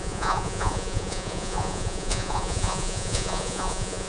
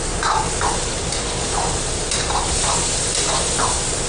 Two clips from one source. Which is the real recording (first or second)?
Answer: second